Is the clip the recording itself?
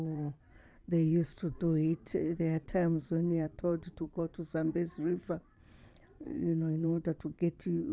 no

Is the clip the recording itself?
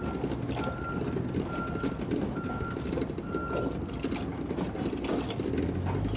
yes